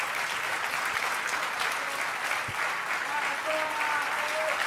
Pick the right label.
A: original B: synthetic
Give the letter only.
A